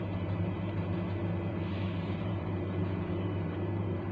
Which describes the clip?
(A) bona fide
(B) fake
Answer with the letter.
B